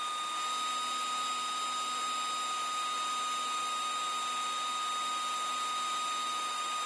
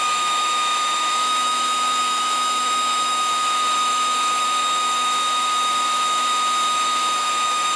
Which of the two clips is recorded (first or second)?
first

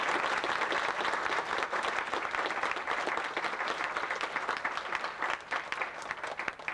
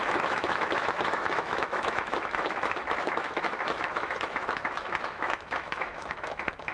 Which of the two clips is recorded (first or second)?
first